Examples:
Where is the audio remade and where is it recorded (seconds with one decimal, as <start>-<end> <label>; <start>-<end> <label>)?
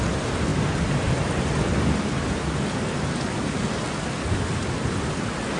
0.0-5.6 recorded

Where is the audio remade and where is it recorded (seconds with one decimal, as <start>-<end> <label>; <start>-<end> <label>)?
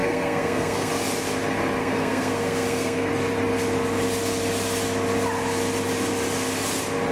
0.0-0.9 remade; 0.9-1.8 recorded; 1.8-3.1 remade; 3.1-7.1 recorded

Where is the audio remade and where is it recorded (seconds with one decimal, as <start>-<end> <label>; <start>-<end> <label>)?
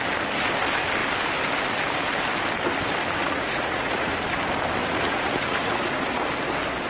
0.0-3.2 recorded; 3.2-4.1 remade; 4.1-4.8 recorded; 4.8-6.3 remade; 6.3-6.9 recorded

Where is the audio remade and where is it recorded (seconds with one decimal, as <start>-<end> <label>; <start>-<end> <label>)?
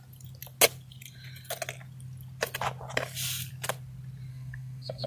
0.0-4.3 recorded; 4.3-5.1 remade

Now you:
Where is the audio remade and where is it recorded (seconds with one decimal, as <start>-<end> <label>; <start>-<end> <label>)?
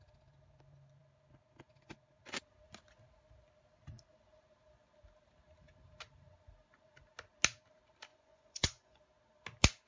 0.0-8.1 recorded; 8.1-9.0 remade; 9.0-9.9 recorded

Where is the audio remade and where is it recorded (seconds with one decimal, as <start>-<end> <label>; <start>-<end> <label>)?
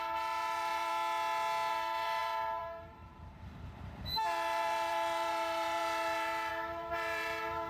0.0-0.9 remade; 0.9-1.7 recorded; 1.7-7.7 remade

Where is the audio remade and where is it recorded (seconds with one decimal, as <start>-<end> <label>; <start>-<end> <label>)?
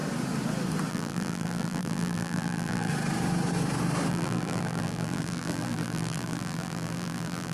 0.0-0.9 recorded; 0.9-2.9 remade; 2.9-4.1 recorded; 4.1-7.5 remade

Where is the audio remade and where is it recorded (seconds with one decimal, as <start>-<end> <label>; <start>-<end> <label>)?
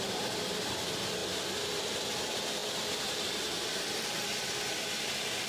0.0-5.5 remade